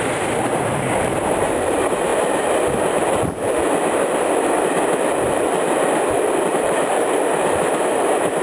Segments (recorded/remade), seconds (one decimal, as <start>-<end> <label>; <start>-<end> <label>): 0.0-2.1 remade; 2.1-6.5 recorded; 6.5-8.4 remade